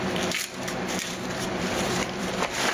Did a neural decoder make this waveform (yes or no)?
yes